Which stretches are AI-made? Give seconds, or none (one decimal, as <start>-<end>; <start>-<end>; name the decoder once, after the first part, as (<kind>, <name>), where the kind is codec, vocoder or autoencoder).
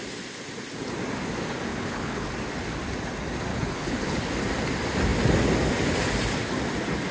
1.7-2.3 (codec, HILCodec); 3.5-4.3